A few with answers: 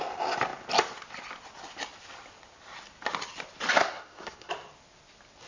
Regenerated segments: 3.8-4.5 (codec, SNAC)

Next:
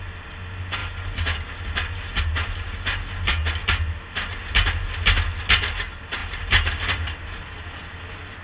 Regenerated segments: none

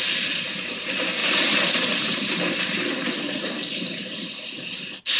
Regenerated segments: 0.0-5.2 (vocoder, BigVGAN v2)

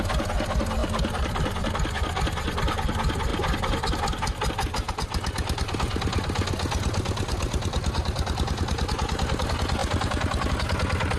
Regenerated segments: 0.8-1.7 (vocoder, BigVGAN v2); 9.8-10.5

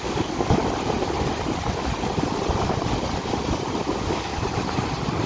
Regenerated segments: 0.0-0.6 (codec, DAC); 3.8-4.3